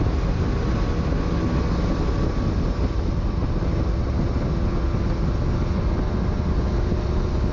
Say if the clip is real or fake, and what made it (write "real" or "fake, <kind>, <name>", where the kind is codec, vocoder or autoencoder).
real